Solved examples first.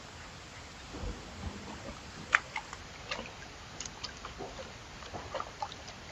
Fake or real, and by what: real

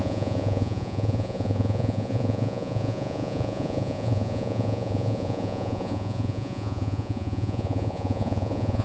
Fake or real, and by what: fake, vocoder, Vocos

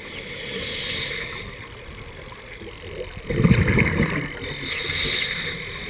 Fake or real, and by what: real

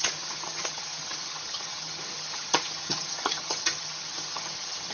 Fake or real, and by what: fake, vocoder, HiFi-GAN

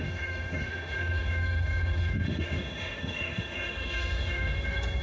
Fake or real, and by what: fake, autoencoder, DAC-VAE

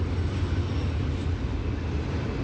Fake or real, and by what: real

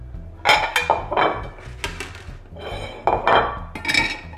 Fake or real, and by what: real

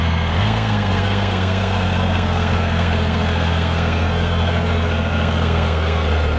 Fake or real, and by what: fake, codec, SNAC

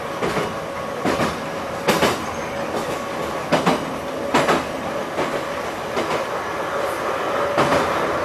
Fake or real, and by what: real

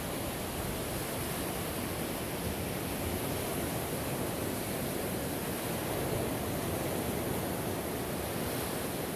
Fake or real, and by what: real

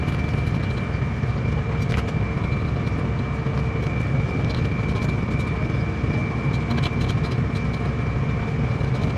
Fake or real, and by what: real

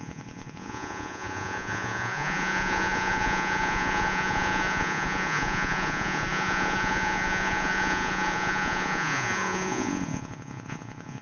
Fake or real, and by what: fake, vocoder, Vocos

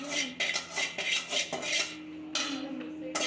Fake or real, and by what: real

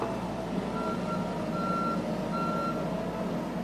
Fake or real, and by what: real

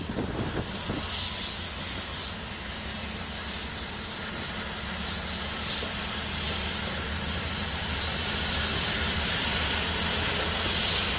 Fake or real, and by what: real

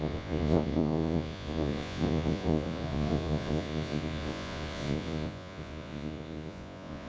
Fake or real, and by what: fake, vocoder, Vocos